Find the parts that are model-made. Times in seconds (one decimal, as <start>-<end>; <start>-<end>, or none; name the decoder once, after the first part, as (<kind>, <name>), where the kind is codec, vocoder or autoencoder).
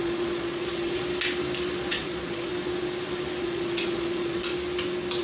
0.0-1.0 (vocoder, Vocos); 1.9-2.5; 3.4-4.5